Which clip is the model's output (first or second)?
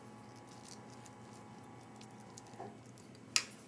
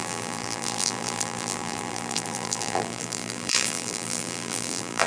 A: second